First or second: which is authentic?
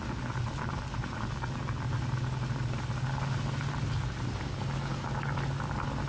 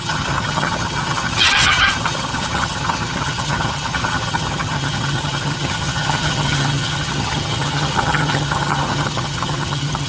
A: first